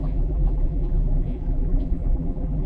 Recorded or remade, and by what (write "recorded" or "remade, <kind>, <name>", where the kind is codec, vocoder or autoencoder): remade, vocoder, BigVGAN v2